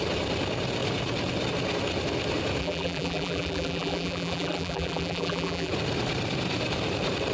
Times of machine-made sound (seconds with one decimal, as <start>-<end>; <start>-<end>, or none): 2.6-5.7